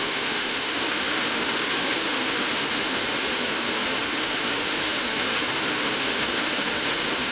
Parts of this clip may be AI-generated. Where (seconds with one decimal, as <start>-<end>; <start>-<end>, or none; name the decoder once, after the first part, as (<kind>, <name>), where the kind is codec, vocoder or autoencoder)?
0.0-7.3 (autoencoder, DAC-VAE)